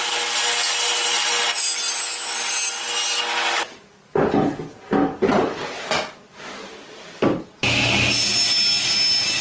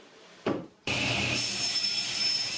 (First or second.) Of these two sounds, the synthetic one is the second